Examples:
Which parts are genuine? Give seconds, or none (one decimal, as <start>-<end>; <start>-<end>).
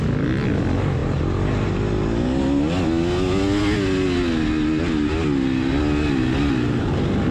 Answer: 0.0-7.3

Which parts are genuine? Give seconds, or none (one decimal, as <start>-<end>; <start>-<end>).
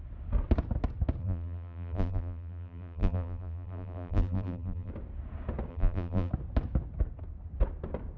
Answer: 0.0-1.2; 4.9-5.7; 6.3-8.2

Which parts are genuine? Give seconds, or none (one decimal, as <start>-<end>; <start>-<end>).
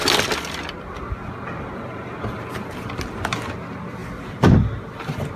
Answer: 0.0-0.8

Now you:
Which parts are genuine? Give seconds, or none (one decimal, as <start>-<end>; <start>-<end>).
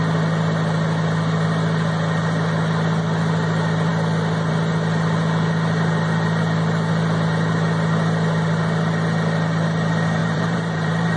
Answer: 0.0-10.2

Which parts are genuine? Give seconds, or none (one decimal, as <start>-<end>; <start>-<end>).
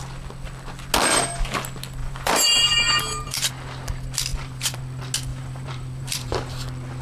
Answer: 0.0-2.0; 3.5-4.3; 4.8-5.3; 6.3-7.0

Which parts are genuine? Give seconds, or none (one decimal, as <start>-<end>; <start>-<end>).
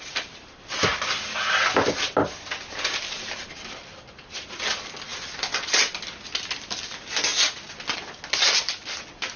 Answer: 0.9-1.8; 7.3-8.6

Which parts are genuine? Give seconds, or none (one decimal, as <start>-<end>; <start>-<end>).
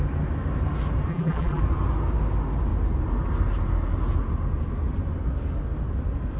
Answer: 0.0-1.1; 1.6-6.4